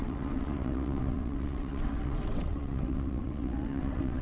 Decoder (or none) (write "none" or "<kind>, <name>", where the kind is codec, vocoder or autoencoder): vocoder, WaveNeXt